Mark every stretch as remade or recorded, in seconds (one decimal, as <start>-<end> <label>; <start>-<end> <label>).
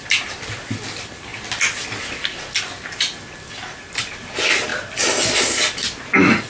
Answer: 0.0-6.5 recorded